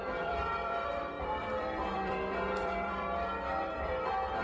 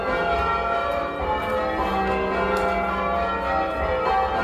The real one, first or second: second